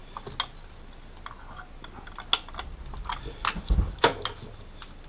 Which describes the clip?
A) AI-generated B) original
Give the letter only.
B